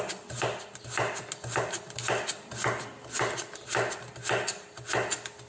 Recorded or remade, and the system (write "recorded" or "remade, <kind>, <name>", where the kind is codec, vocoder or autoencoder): recorded